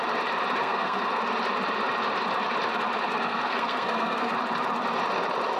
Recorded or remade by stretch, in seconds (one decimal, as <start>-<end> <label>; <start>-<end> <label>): 0.0-0.6 recorded; 0.6-1.2 remade; 1.2-3.1 recorded; 3.1-4.3 remade; 4.3-5.6 recorded